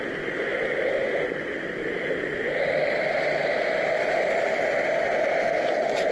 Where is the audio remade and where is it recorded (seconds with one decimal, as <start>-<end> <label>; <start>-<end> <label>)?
0.0-6.1 recorded